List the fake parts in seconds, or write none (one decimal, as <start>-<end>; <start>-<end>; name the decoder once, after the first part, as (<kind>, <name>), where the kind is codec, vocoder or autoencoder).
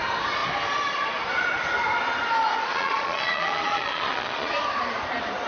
2.7-4.5 (vocoder, Vocos)